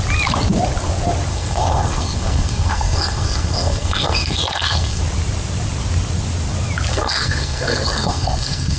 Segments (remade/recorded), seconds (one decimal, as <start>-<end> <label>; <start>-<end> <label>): 0.0-1.3 recorded; 1.3-5.0 remade; 5.0-6.9 recorded; 6.9-8.8 remade